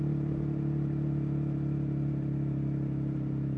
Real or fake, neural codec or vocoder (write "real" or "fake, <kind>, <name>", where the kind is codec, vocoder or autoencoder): real